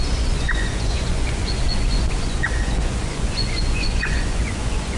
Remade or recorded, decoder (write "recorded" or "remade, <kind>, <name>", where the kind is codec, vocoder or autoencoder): remade, vocoder, Vocos